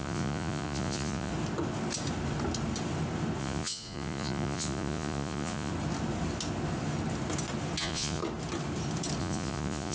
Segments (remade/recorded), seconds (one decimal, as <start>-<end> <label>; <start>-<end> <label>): 0.0-1.3 remade; 1.3-3.4 recorded; 3.4-5.7 remade; 5.7-7.8 recorded; 7.8-8.2 remade; 8.2-9.2 recorded; 9.2-9.9 remade